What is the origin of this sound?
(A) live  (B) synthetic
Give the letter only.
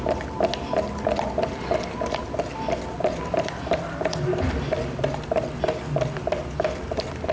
A